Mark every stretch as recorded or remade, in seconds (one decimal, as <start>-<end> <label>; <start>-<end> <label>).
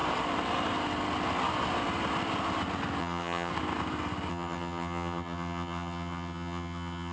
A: 0.0-3.0 recorded; 3.0-3.5 remade; 3.5-4.3 recorded; 4.3-7.1 remade